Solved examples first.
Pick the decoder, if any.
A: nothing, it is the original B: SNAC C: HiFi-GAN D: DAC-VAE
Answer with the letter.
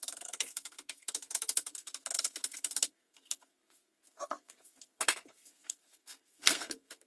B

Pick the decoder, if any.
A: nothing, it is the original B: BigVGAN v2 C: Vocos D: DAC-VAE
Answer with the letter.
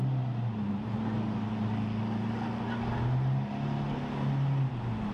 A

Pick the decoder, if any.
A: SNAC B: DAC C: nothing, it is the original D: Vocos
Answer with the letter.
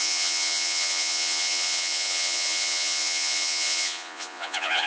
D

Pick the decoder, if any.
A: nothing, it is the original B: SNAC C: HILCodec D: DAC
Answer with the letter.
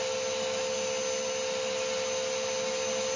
A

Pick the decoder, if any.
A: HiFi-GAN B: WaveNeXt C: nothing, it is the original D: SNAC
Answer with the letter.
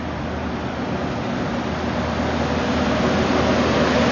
C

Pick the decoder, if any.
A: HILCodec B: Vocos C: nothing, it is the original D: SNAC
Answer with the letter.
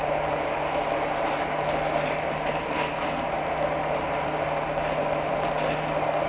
C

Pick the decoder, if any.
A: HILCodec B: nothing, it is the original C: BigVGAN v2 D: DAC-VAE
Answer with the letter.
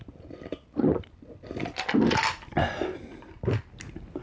B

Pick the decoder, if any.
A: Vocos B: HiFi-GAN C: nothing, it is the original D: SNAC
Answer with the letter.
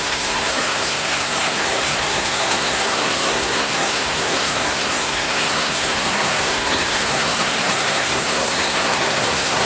D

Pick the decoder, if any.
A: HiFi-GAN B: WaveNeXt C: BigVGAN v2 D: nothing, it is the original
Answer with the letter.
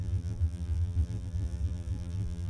C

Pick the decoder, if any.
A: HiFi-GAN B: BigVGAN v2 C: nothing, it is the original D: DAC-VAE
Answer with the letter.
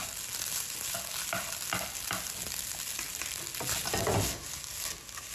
C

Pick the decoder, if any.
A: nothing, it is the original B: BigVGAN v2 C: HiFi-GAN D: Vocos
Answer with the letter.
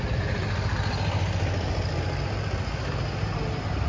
A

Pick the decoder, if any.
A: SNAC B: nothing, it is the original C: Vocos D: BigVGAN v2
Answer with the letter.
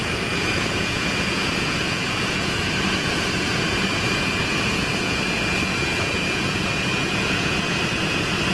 C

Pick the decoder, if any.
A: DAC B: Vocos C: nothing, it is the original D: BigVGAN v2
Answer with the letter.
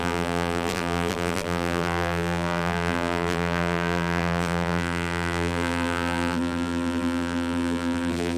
D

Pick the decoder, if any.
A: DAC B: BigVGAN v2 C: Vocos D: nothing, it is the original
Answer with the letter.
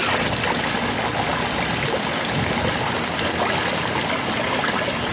D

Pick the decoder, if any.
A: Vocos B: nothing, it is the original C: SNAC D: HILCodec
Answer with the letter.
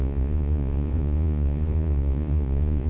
A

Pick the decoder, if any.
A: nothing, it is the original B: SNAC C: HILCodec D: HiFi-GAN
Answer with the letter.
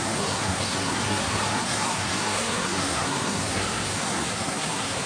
B